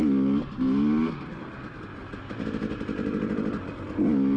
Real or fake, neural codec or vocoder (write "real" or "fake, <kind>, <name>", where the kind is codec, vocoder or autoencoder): real